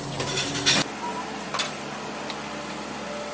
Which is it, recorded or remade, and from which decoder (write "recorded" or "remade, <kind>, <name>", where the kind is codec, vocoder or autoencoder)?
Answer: recorded